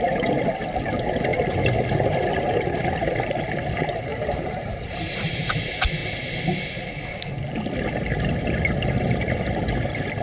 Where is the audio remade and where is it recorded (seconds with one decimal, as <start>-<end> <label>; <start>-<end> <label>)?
0.0-4.1 recorded; 4.1-5.5 remade; 5.5-10.2 recorded